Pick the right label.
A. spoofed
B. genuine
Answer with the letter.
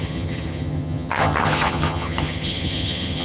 A